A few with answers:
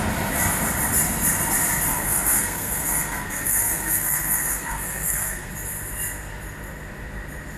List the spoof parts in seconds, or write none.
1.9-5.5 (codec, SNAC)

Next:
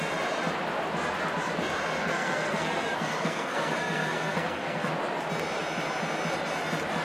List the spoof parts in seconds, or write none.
2.0-4.9 (codec, SNAC)

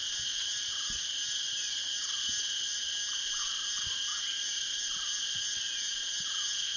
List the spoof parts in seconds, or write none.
none

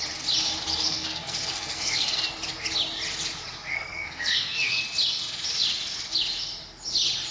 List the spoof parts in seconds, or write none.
0.7-2.2 (codec, SNAC); 3.7-4.8

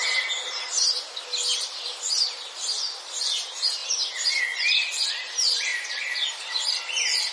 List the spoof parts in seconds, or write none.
5.7-7.3 (vocoder, BigVGAN v2)

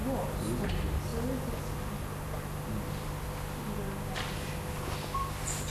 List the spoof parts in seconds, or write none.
none